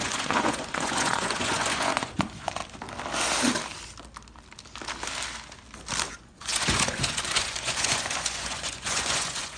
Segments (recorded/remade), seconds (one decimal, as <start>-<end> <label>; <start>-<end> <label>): 0.0-2.6 remade; 2.6-6.1 recorded; 6.1-9.6 remade